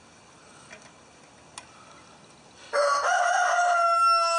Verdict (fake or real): real